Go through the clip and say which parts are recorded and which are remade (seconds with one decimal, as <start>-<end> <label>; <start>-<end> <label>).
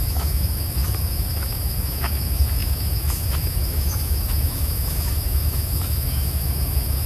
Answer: 0.0-7.1 remade